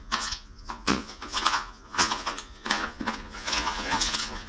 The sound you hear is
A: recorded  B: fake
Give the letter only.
B